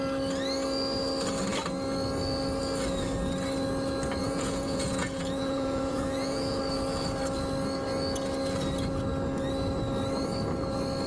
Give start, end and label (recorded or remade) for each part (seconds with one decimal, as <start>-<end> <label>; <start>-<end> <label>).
0.0-4.2 recorded; 4.2-6.6 remade; 6.6-11.1 recorded